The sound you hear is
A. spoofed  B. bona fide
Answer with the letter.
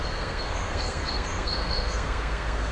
A